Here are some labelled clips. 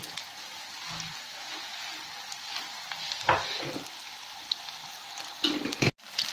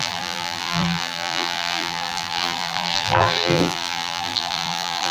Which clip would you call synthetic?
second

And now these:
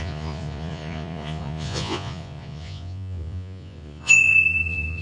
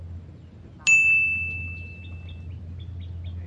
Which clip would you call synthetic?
first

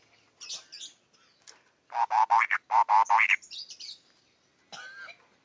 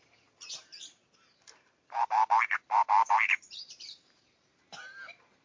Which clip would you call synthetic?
second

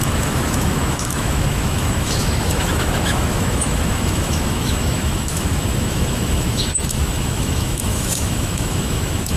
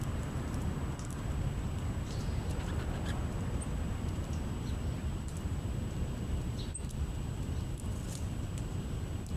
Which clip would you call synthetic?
first